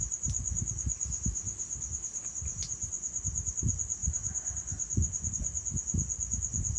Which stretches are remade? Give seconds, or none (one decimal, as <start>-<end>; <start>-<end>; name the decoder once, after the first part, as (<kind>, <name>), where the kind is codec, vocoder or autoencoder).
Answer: 2.5-3.2 (vocoder, Vocos); 4.0-5.3